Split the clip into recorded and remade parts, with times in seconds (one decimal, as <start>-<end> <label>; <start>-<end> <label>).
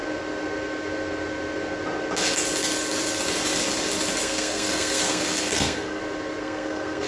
0.0-4.2 recorded; 4.2-6.0 remade; 6.0-6.4 recorded; 6.4-7.1 remade